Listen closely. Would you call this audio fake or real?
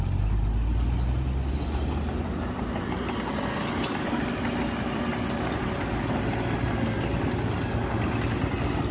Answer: real